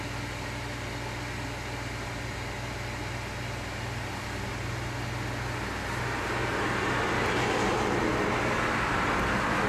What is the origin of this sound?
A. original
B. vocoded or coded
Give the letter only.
A